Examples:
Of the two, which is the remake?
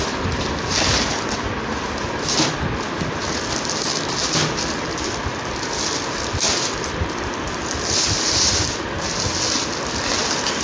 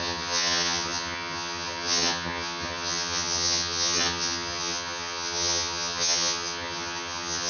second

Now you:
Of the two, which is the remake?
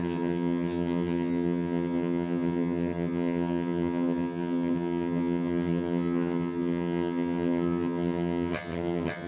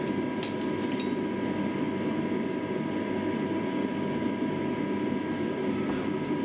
first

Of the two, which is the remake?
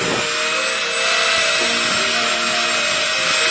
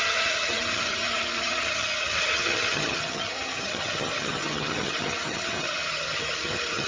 second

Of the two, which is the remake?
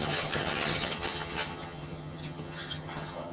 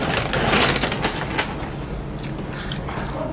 first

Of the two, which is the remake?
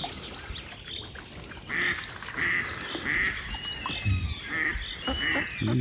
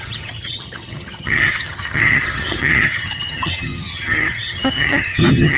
second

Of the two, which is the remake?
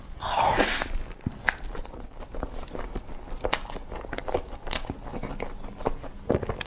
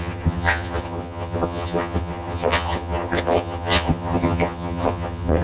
second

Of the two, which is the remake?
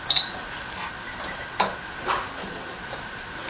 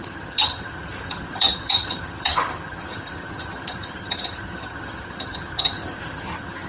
second